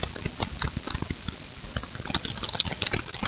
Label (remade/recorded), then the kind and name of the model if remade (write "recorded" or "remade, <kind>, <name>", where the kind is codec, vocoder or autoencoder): recorded